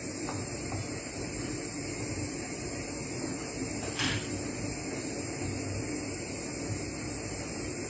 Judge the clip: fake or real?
real